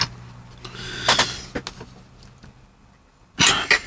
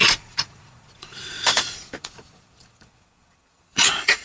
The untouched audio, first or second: first